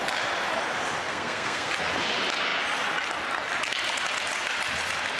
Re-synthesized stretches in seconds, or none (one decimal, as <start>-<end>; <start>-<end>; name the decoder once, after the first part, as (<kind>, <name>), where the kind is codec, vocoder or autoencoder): 1.1-1.7 (codec, SNAC)